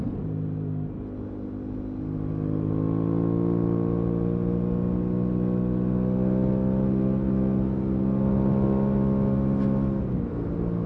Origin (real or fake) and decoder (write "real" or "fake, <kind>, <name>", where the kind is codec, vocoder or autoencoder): real